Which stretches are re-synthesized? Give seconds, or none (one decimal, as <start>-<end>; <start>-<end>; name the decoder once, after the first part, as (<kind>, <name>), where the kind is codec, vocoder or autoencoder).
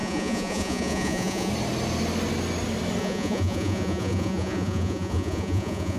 0.0-1.5 (vocoder, Vocos); 3.0-6.0